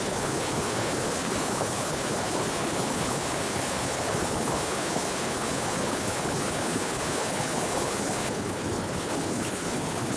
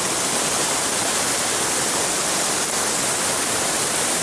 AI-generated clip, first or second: first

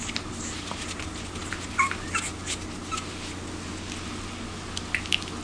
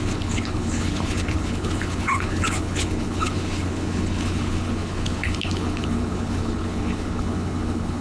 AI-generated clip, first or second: second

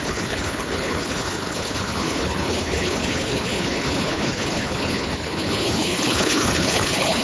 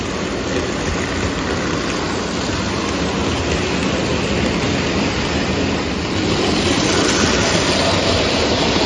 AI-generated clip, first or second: first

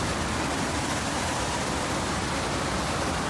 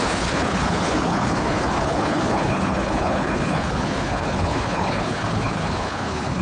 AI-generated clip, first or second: second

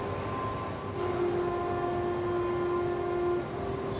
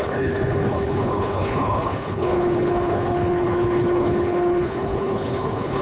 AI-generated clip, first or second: second